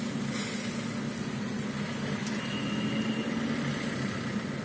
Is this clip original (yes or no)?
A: yes